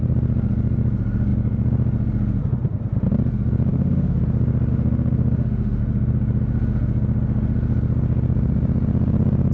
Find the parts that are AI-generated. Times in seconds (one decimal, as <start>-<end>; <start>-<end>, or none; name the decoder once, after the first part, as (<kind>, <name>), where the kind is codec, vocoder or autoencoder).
3.7-4.2 (autoencoder, DAC-VAE); 4.7-5.8